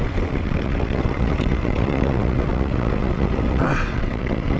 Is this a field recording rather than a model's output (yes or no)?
no